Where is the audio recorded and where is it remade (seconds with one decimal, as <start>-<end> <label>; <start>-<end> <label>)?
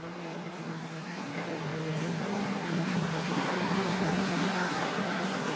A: 0.0-5.6 remade